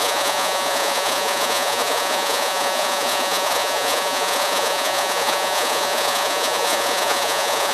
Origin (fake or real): fake